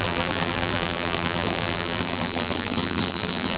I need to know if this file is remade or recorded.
remade